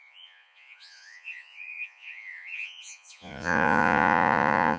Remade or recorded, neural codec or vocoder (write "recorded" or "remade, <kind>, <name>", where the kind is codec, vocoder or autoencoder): remade, vocoder, Vocos